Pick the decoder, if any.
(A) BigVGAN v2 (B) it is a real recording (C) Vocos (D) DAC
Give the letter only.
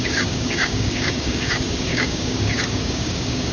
D